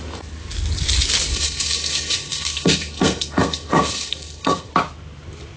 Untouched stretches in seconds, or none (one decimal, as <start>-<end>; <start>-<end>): 0.0-1.3; 4.7-5.6